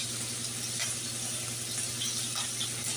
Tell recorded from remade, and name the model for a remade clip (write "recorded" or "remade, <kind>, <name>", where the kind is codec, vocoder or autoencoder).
recorded